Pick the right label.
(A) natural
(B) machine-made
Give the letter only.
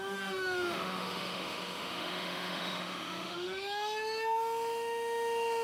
B